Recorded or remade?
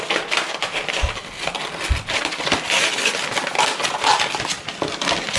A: recorded